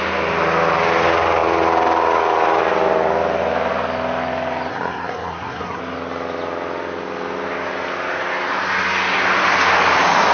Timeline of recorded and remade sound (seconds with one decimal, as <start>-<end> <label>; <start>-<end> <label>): 0.0-4.7 recorded; 4.7-5.8 remade; 5.8-10.3 recorded